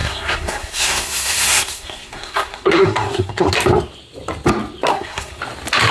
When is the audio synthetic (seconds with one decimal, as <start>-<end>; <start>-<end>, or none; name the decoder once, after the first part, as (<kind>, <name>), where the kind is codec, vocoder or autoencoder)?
0.0-3.5 (codec, SNAC); 4.9-5.4